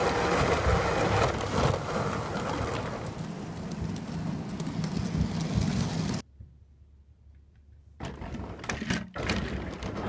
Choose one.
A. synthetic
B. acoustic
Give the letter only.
B